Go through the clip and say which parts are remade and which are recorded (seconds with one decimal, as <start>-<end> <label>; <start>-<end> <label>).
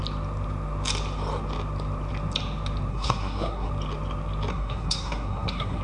0.0-2.9 recorded; 2.9-3.7 remade; 3.7-4.5 recorded; 4.5-5.8 remade